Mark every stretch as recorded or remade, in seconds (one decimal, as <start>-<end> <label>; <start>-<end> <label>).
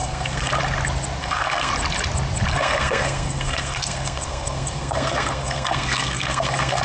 0.0-0.5 remade; 0.5-1.2 recorded; 1.2-1.7 remade; 1.7-2.5 recorded; 2.5-6.8 remade